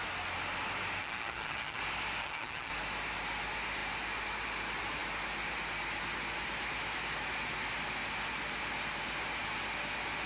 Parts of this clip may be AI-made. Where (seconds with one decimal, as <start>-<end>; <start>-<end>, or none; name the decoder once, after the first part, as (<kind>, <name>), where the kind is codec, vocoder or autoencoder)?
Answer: 1.0-1.8 (vocoder, HiFi-GAN); 2.2-2.7